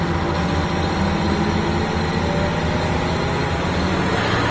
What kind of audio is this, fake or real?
real